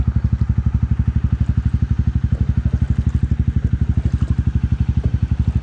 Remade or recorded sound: recorded